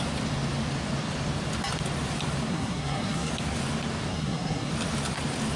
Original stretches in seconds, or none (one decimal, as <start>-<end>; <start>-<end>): 0.0-2.5; 3.3-4.1; 4.7-5.6